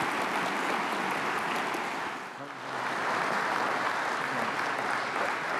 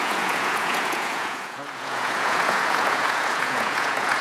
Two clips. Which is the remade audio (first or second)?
second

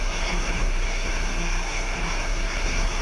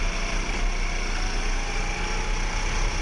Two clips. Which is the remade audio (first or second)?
first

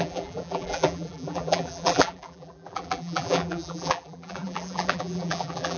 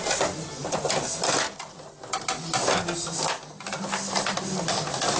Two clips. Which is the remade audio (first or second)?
first